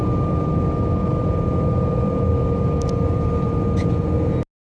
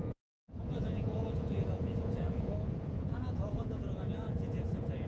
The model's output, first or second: second